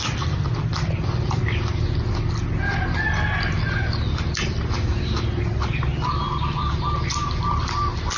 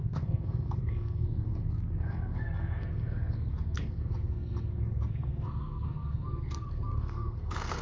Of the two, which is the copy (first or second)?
second